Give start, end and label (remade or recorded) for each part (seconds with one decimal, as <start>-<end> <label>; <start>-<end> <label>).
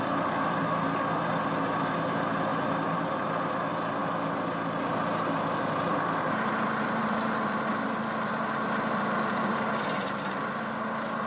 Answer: 0.0-2.5 recorded; 2.5-3.4 remade; 3.4-5.9 recorded; 5.9-6.5 remade; 6.5-11.3 recorded